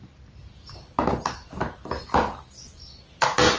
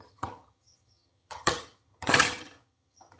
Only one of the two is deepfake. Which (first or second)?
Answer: second